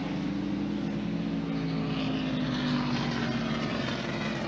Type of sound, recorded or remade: recorded